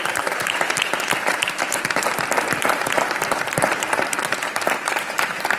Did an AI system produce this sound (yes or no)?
yes